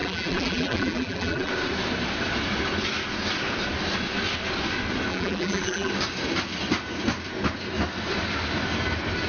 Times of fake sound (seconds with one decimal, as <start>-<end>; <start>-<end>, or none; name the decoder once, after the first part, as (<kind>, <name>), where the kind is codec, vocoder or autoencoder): 0.0-1.5 (vocoder, BigVGAN v2); 5.1-5.9